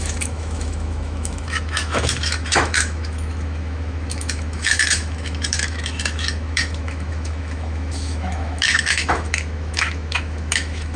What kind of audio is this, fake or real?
fake